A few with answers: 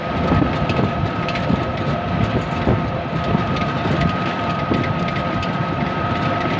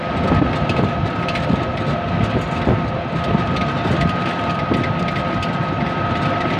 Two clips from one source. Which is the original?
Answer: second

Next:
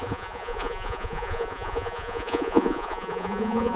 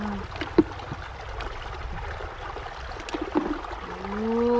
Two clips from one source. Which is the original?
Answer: second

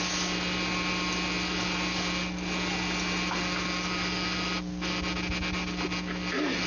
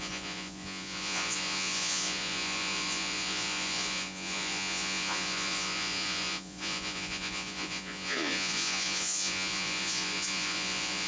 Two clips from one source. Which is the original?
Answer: first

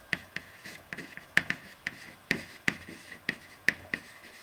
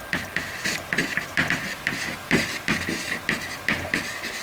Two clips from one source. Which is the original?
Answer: second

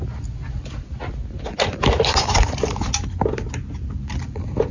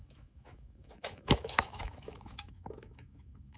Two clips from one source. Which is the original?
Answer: first